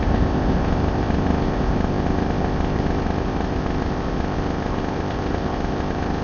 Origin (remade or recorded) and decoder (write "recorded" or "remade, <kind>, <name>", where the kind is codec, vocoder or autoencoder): remade, codec, ZipCodec